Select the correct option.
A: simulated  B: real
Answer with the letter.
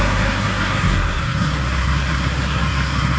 A